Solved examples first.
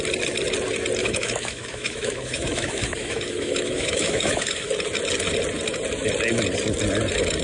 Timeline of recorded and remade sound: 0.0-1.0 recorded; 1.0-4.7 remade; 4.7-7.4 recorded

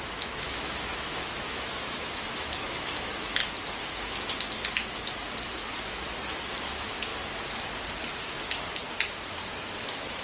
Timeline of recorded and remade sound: 0.0-3.4 remade; 3.4-6.6 recorded; 6.6-7.1 remade; 7.1-9.3 recorded; 9.3-10.2 remade

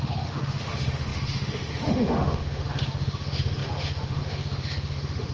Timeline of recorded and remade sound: 0.0-5.3 remade